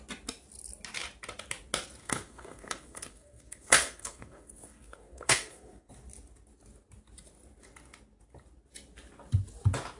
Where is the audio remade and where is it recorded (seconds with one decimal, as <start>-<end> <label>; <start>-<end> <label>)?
0.0-2.0 recorded; 2.0-5.9 remade; 5.9-10.0 recorded